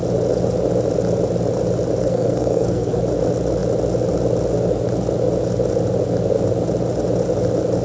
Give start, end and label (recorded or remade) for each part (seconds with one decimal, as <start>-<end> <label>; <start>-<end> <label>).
0.0-2.0 recorded; 2.0-3.0 remade; 3.0-7.8 recorded